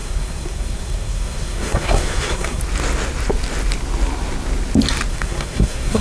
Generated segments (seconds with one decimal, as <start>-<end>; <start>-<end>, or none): 0.0-2.6; 5.1-6.0